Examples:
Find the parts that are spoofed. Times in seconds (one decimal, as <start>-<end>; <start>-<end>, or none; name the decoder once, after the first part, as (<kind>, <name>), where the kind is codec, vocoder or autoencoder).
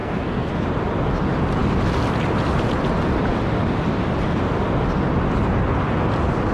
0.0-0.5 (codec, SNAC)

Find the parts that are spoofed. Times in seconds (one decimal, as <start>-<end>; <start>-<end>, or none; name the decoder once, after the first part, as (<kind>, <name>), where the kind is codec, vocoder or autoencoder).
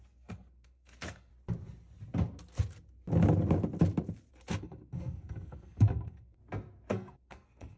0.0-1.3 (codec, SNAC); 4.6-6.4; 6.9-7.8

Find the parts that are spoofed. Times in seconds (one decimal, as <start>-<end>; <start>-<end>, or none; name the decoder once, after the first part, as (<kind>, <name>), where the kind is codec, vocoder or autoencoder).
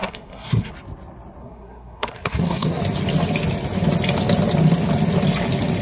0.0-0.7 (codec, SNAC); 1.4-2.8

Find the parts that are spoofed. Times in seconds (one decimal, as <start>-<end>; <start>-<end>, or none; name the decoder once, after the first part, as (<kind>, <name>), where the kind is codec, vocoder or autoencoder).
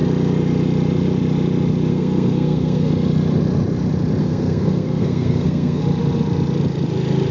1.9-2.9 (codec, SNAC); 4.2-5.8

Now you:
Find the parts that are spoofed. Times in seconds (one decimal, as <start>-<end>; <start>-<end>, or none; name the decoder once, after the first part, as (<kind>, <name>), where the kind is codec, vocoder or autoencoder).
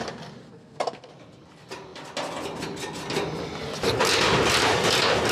0.4-1.1 (codec, SNAC)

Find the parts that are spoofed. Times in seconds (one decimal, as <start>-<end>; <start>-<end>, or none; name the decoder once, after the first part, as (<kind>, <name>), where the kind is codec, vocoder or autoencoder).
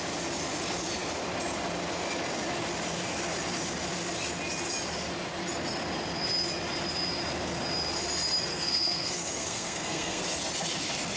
8.5-10.2 (codec, SNAC)